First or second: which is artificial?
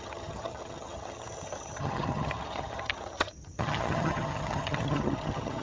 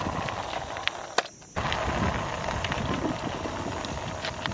first